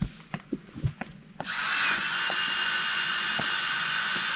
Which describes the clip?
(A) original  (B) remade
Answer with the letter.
B